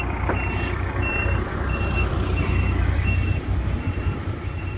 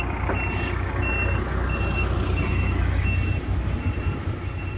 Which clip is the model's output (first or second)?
first